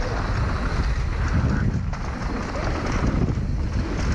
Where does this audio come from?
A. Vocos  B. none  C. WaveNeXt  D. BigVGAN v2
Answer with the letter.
B